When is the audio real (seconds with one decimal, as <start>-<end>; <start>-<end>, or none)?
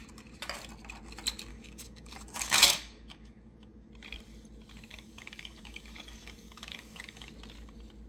0.0-1.5; 3.9-4.9; 7.3-8.1